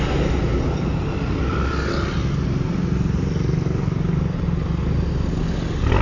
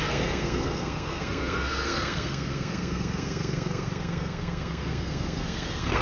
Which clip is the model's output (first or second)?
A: second